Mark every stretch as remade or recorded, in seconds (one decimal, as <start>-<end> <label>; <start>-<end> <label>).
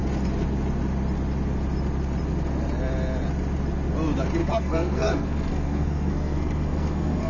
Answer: 0.0-4.4 recorded; 4.4-7.3 remade